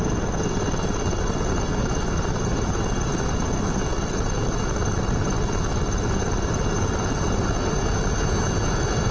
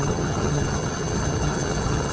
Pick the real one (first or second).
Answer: first